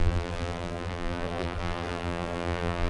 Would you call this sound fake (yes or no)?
yes